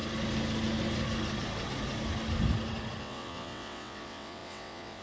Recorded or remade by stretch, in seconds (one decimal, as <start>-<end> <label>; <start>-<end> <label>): 0.0-3.0 recorded; 3.0-5.0 remade